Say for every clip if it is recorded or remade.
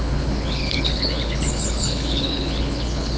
remade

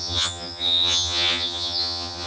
remade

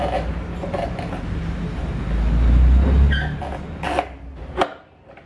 recorded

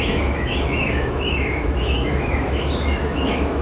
remade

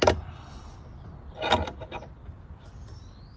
recorded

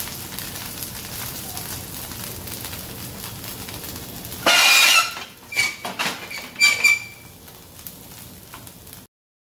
recorded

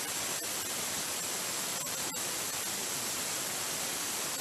recorded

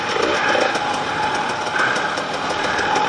recorded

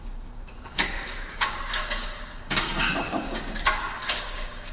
remade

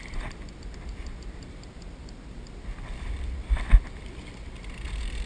recorded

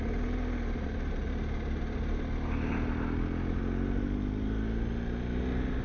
recorded